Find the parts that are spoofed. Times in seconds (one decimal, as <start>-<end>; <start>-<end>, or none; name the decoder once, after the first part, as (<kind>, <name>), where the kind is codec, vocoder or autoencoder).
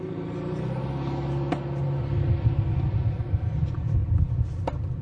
none